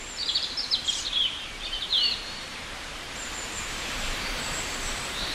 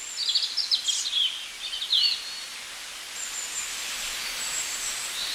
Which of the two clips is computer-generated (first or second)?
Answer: first